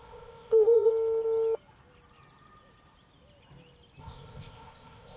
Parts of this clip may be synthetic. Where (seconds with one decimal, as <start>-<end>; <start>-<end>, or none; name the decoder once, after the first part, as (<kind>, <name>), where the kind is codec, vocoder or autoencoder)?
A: 0.0-0.9 (codec, ZipCodec); 4.0-5.2